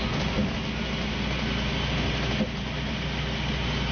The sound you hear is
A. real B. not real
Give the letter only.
A